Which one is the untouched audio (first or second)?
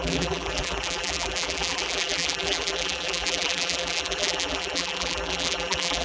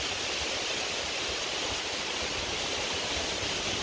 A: second